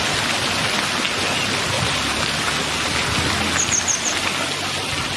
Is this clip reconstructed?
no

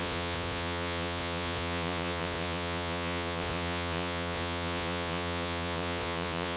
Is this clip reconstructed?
yes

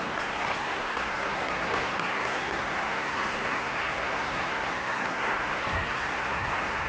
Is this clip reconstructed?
yes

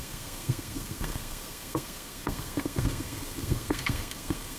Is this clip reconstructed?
yes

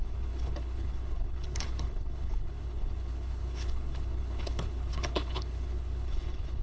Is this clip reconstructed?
yes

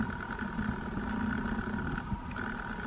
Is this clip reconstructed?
no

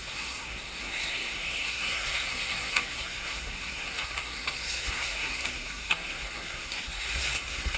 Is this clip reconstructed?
yes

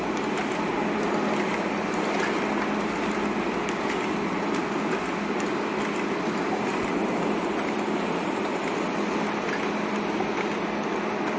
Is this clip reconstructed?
no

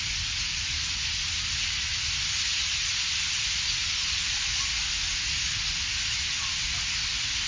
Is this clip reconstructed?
no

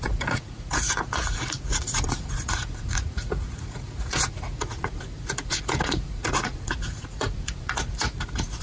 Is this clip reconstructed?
yes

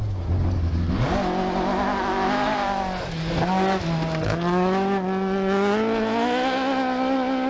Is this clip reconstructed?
no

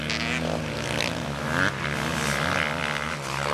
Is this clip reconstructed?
no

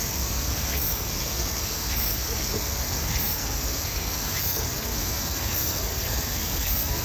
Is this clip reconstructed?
yes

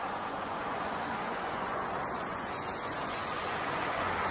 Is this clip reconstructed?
yes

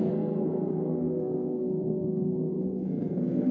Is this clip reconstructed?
yes